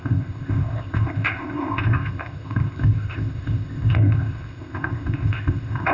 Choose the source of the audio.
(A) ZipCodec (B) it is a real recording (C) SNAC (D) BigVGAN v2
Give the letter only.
A